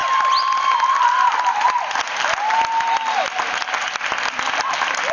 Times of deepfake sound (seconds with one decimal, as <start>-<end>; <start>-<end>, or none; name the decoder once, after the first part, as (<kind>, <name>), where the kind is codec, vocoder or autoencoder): none